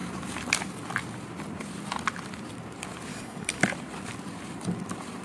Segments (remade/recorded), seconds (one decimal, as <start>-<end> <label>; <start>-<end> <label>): 0.0-3.1 recorded; 3.1-3.6 remade; 3.6-5.2 recorded